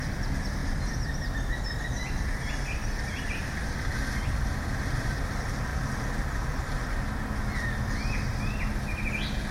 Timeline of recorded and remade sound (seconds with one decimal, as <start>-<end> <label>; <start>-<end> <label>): 0.0-0.6 recorded; 0.6-2.2 remade; 2.2-2.8 recorded; 2.8-3.7 remade; 3.7-9.5 recorded